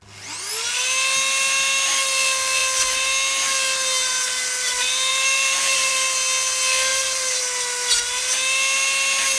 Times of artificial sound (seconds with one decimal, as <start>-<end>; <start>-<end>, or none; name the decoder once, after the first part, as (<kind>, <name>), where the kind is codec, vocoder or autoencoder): 5.1-5.9 (vocoder, BigVGAN v2); 6.9-7.4